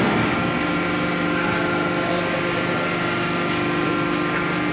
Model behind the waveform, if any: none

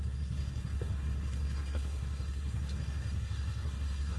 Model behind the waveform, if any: codec, SNAC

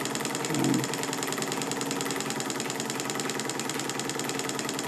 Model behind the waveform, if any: none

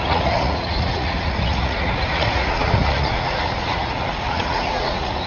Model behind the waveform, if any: vocoder, Vocos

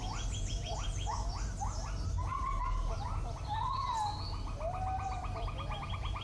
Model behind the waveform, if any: none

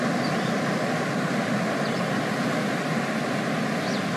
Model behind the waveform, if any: none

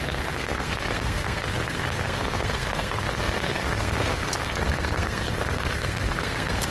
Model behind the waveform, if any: codec, SNAC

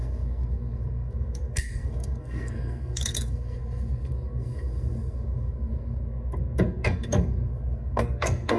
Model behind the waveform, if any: codec, SNAC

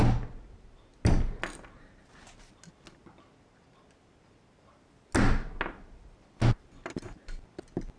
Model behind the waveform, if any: none